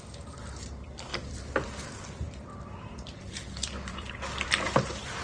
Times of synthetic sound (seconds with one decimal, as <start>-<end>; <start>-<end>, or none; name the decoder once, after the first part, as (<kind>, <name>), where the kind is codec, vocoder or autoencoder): 0.0-5.2 (vocoder, BigVGAN v2)